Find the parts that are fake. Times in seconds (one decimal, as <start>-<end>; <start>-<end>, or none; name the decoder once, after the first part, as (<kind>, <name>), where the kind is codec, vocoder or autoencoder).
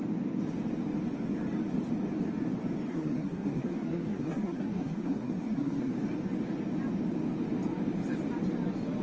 2.9-5.9 (codec, SNAC)